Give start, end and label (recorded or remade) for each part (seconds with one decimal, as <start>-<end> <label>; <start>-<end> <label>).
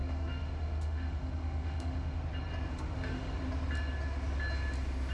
0.0-2.2 remade; 2.2-2.7 recorded; 2.7-3.3 remade; 3.3-5.1 recorded